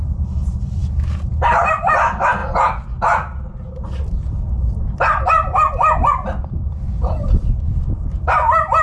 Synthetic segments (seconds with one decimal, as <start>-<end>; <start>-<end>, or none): none